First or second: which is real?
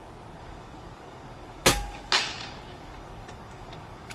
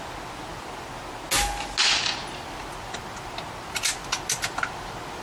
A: second